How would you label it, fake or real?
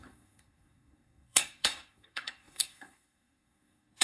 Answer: fake